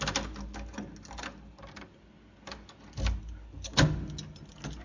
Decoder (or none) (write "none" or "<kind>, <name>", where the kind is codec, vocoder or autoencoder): none